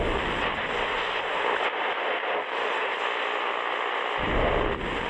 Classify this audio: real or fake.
real